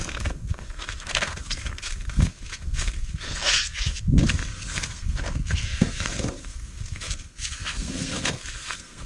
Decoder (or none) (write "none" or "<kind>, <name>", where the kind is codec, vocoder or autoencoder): codec, SNAC